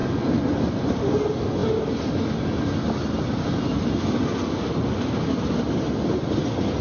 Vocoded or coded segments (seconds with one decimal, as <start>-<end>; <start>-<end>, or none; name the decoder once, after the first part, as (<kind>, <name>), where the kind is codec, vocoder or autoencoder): none